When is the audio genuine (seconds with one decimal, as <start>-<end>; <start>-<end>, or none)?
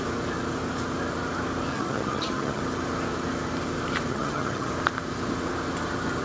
0.0-1.7; 2.6-4.1; 4.7-6.2